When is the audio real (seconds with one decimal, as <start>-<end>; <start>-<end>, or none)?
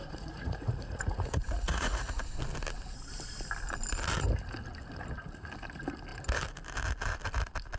2.4-7.8